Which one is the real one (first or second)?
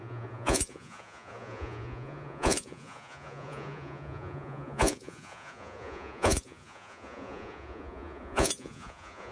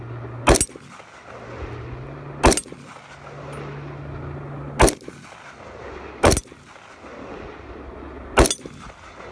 second